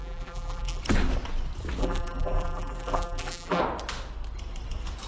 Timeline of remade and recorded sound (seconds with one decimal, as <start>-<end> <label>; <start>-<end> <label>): 0.0-0.8 remade; 0.8-1.8 recorded; 1.8-3.6 remade; 3.6-5.1 recorded